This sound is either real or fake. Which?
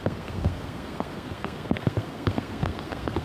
fake